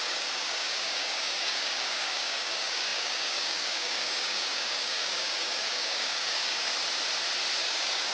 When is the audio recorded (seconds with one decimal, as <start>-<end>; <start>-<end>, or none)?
6.7-7.6